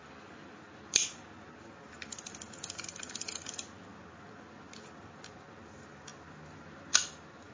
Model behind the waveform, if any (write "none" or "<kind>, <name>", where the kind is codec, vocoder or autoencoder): vocoder, BigVGAN v2